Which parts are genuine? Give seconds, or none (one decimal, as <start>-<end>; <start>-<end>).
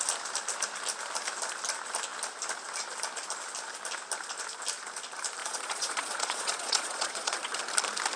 0.0-5.4; 7.6-8.2